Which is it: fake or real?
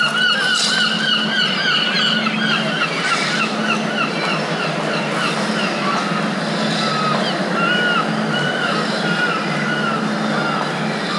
real